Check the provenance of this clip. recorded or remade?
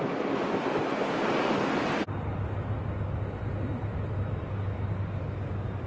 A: recorded